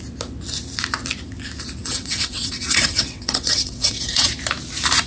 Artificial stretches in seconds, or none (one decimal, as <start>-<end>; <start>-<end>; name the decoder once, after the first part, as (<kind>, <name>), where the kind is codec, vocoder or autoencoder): 1.8-4.3 (vocoder, WaveNeXt)

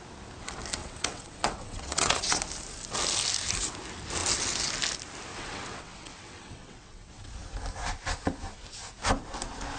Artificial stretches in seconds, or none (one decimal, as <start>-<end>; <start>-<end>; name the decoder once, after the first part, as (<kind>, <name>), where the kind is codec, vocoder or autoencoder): 0.8-2.4 (vocoder, WaveNeXt); 5.3-7.3

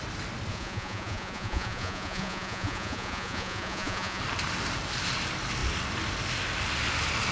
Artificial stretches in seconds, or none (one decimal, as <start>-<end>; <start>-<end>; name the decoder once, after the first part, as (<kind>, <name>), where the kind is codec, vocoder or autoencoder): 0.5-4.2 (vocoder, Vocos)